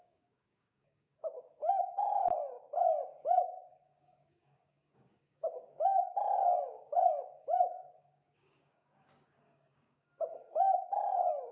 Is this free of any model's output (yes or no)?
no